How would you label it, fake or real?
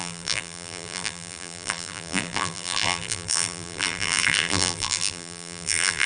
fake